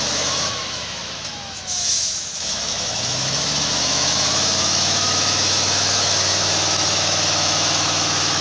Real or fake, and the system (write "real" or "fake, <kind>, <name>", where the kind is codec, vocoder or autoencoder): fake, autoencoder, DAC-VAE